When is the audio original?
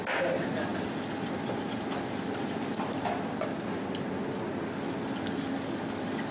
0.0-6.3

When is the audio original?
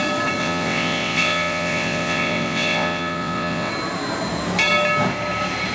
0.0-0.4; 3.7-5.7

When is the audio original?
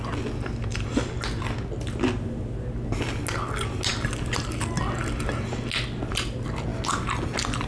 0.0-7.7